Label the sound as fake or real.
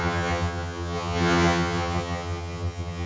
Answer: fake